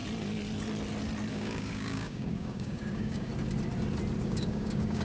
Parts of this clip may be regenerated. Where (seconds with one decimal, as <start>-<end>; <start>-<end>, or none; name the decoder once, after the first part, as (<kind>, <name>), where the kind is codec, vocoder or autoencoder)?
1.3-3.3 (codec, DAC); 4.2-5.0